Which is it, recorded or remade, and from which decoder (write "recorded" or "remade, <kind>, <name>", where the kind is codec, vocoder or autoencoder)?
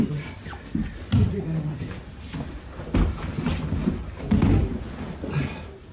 recorded